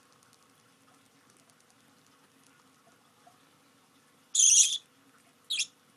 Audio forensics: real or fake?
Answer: real